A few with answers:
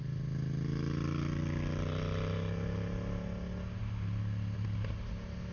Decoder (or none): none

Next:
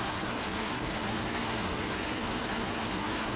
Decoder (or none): codec, SNAC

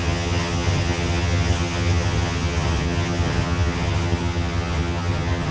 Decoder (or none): vocoder, HiFi-GAN